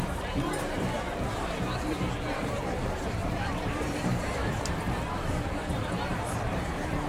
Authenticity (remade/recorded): remade